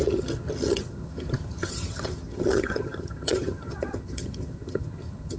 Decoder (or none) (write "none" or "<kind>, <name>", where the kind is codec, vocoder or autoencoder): vocoder, HiFi-GAN